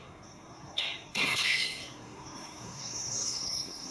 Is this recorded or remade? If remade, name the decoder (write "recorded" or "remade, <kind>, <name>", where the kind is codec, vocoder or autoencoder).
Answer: remade, codec, SNAC